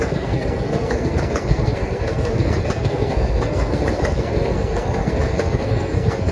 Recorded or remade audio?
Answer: remade